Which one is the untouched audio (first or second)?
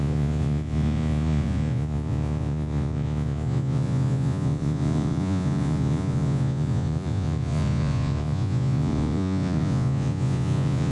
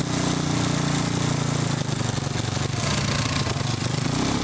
second